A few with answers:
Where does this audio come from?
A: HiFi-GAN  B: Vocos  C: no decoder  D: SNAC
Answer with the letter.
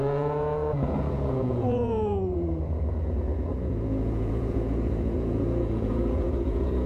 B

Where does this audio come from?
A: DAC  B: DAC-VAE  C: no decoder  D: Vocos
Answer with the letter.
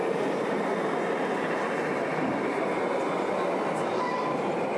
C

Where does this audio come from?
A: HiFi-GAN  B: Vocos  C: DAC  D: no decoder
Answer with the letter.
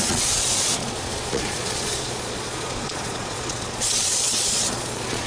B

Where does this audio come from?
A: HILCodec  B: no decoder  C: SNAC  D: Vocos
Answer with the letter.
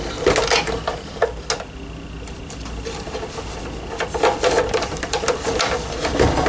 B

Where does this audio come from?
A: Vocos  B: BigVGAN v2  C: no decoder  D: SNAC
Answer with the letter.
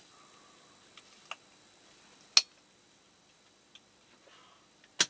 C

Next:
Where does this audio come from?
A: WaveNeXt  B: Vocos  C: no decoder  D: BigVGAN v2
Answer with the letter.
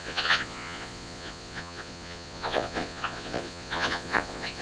B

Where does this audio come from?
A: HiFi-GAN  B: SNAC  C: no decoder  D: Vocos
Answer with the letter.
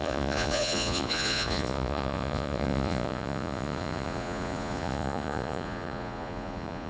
D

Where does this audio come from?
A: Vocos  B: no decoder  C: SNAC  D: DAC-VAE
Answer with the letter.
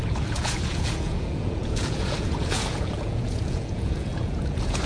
A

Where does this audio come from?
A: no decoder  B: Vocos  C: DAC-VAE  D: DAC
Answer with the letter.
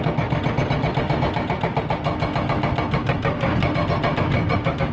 A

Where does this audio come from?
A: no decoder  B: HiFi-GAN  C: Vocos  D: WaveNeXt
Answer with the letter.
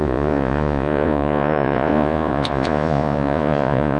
C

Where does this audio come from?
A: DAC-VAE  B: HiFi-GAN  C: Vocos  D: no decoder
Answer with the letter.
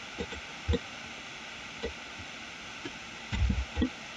D